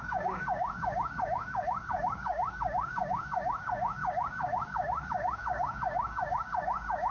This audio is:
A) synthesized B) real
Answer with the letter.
A